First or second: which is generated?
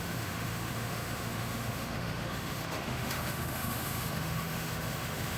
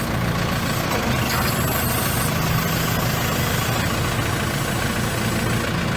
first